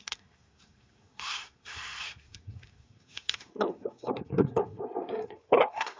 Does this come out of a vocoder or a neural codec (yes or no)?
yes